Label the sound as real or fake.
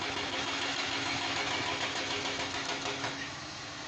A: fake